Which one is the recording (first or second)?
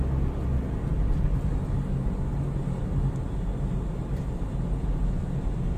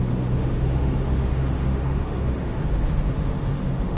first